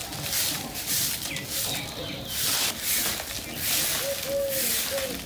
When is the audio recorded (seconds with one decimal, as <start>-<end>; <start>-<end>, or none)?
0.0-5.3